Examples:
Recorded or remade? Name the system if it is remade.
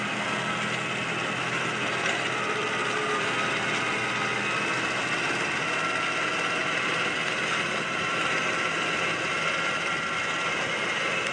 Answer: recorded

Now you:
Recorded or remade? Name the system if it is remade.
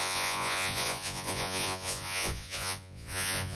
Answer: remade, vocoder, Vocos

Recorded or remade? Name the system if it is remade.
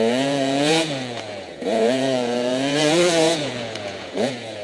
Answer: remade, vocoder, Vocos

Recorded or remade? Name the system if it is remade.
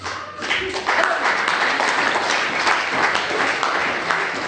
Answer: recorded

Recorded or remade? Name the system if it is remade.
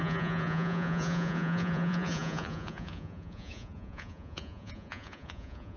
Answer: remade, vocoder, Vocos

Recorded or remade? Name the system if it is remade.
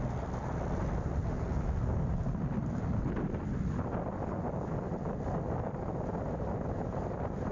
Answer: recorded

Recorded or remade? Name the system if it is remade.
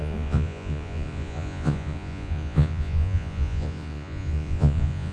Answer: remade, vocoder, Vocos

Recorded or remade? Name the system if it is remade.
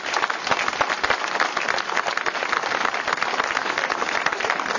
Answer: recorded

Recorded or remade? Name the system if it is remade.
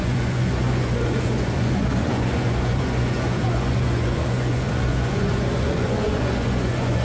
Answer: remade, vocoder, Vocos